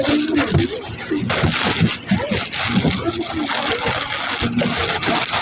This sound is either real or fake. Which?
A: real